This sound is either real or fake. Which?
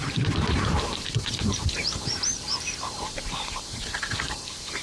fake